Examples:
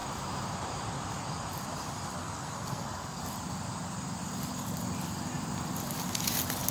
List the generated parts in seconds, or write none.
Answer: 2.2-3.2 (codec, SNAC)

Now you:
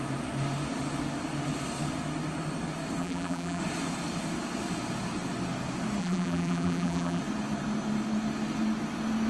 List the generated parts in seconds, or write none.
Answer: 3.0-3.6 (vocoder, BigVGAN v2); 6.0-7.2

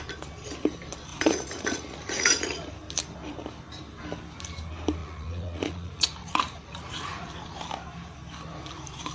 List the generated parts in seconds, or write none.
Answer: 1.1-2.7 (vocoder, Vocos); 5.0-7.3

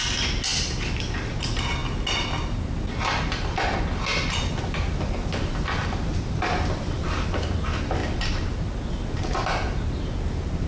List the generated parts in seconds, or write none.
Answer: none

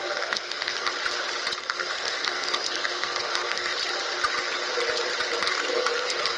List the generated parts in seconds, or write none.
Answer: 0.0-0.9 (codec, SNAC); 1.6-3.7; 5.4-6.4

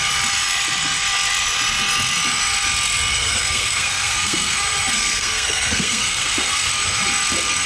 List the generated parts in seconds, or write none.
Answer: 3.1-6.7 (codec, SNAC)

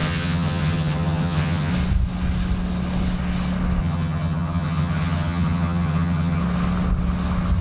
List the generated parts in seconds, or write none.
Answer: 0.0-1.7 (vocoder, HiFi-GAN); 3.8-6.4

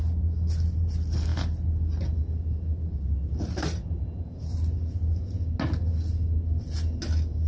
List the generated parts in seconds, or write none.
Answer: none